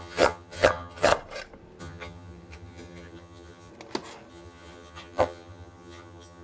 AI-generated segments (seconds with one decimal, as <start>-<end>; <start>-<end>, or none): 0.0-1.1; 1.8-3.7; 4.3-6.4